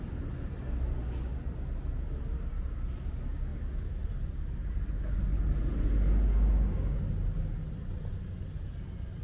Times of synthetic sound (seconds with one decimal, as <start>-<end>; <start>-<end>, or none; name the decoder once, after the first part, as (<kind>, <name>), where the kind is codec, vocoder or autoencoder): none